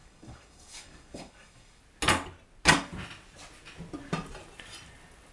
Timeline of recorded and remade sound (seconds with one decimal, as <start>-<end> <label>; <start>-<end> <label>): 0.0-1.8 remade; 1.8-5.3 recorded